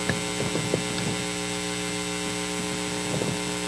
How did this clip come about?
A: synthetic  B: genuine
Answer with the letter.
B